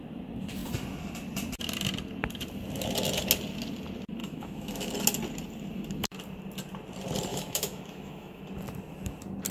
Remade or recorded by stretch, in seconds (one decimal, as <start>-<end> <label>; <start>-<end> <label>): 0.0-4.2 recorded; 4.2-4.9 remade; 4.9-7.3 recorded; 7.3-8.4 remade; 8.4-9.5 recorded